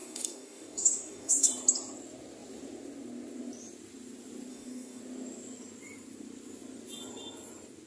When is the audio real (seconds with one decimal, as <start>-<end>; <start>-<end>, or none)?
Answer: 1.5-4.5; 5.0-7.9